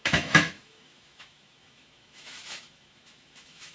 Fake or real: fake